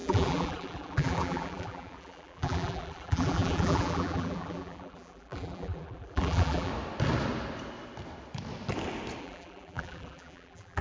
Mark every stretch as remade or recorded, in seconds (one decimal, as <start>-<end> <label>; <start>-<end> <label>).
0.0-6.7 remade; 6.7-9.2 recorded; 9.2-10.8 remade